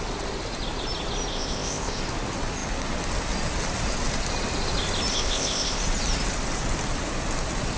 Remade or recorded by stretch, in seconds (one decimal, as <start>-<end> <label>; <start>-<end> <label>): 0.0-1.3 recorded; 1.3-2.0 remade; 2.0-5.1 recorded; 5.1-5.8 remade; 5.8-7.8 recorded